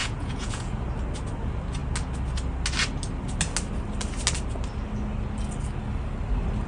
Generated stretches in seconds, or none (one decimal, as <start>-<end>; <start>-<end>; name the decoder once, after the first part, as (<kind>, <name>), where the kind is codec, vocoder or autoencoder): 0.0-0.8 (vocoder, Vocos)